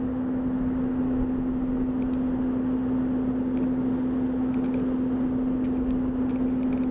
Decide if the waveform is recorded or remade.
recorded